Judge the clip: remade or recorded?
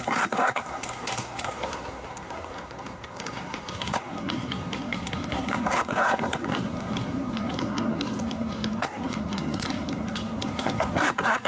remade